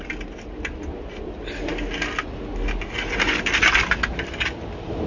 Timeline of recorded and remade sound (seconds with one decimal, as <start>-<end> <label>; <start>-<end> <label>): 0.0-5.1 recorded